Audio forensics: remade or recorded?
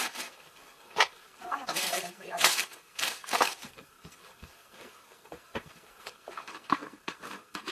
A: remade